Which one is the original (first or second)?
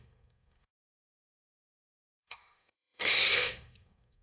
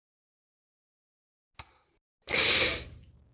second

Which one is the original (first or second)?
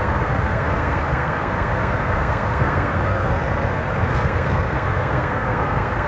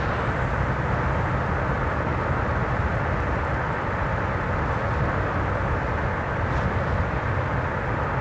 second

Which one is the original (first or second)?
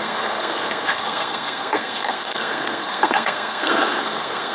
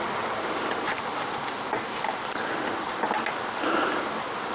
second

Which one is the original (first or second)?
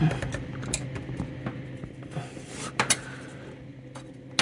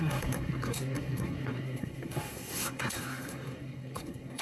first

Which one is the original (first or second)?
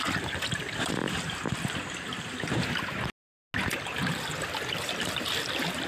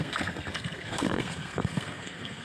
first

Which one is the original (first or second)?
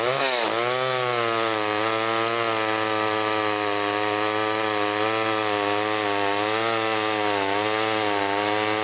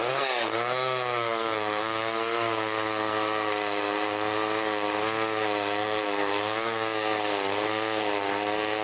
first